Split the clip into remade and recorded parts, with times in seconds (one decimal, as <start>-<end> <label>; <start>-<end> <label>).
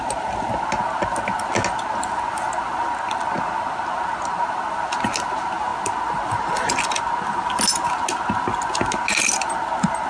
0.0-10.1 recorded